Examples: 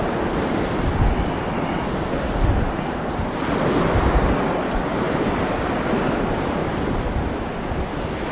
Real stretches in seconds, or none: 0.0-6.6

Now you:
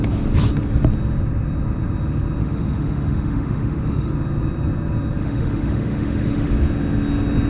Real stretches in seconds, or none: 0.0-2.4; 4.1-5.2; 6.5-7.5

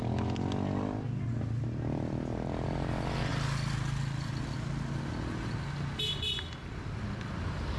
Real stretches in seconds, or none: 0.0-7.8

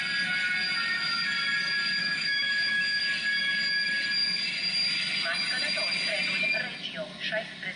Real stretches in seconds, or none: 0.0-2.0; 3.0-7.8

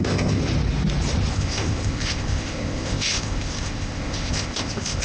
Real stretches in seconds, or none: 0.4-1.3

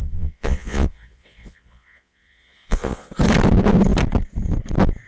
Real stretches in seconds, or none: 3.1-5.1

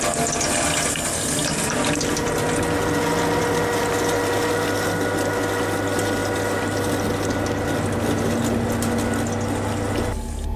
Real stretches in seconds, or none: 0.0-10.6